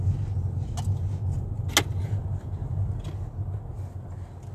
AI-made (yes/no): no